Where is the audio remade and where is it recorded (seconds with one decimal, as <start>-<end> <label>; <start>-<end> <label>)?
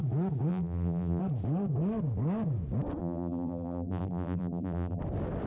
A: 0.0-0.5 recorded; 0.5-1.2 remade; 1.2-3.0 recorded; 3.0-5.0 remade; 5.0-5.5 recorded